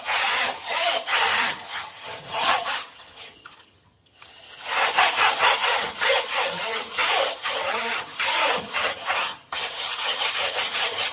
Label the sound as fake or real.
fake